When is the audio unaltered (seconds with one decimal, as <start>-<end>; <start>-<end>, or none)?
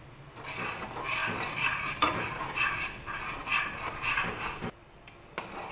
0.0-1.2; 2.4-5.7